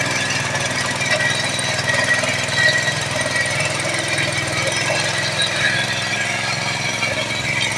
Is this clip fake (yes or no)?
no